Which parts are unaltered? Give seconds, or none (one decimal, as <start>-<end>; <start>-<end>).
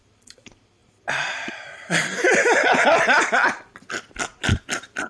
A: none